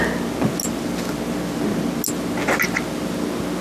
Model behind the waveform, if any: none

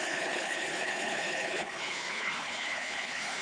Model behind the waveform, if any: codec, HILCodec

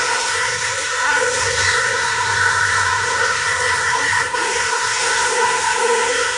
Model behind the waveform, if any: codec, SNAC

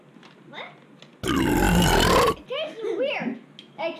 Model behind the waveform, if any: none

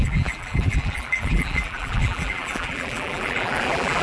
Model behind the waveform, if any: vocoder, BigVGAN v2